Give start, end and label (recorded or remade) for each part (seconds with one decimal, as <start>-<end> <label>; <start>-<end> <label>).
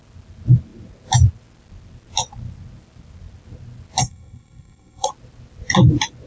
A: 0.0-4.0 recorded; 4.0-5.1 remade; 5.1-6.3 recorded